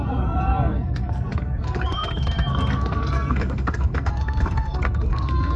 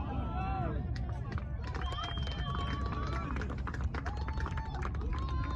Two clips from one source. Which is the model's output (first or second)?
first